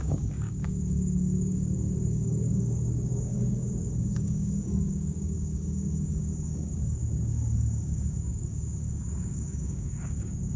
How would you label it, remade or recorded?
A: remade